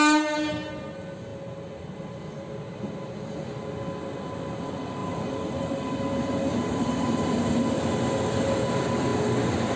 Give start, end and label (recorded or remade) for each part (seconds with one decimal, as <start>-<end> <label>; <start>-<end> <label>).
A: 0.0-5.0 recorded; 5.0-5.7 remade; 5.7-6.5 recorded; 6.5-7.6 remade; 7.6-9.8 recorded